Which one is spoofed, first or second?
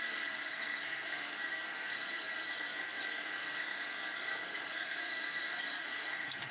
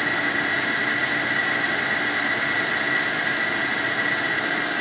first